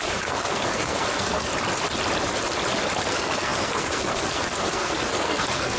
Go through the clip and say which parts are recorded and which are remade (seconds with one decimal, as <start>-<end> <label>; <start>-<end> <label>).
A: 0.0-1.5 remade; 1.5-3.1 recorded; 3.1-5.8 remade